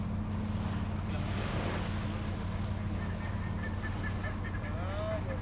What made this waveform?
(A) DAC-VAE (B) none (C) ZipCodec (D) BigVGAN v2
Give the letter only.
B